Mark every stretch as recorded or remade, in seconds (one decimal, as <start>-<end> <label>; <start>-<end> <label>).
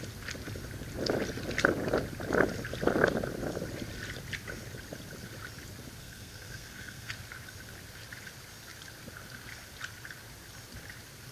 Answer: 0.0-6.0 recorded; 6.0-7.1 remade; 7.1-11.3 recorded